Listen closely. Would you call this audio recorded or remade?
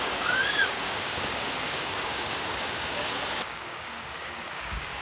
remade